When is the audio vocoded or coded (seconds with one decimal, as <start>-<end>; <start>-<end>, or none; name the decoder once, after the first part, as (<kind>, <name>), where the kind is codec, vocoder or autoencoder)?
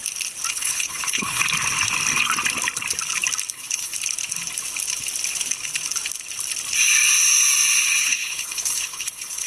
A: 0.5-1.4 (codec, HILCodec); 3.5-3.9; 8.0-9.5